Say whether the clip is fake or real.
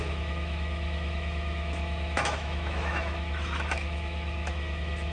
fake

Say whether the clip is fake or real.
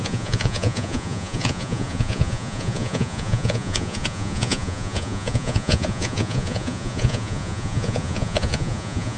fake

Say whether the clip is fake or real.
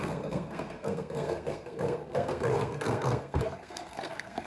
fake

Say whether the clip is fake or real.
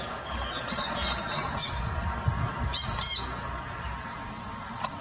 real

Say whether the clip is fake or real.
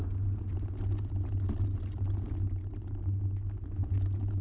real